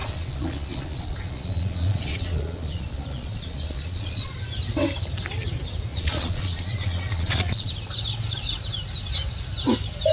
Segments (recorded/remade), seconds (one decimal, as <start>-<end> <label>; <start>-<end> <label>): 0.0-4.3 remade; 4.3-5.9 recorded; 5.9-7.7 remade; 7.7-10.1 recorded